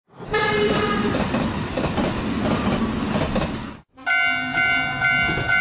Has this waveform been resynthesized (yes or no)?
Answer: no